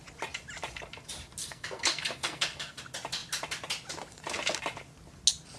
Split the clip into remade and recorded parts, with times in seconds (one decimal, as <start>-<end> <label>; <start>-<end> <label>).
0.0-1.4 recorded; 1.4-2.8 remade; 2.8-5.6 recorded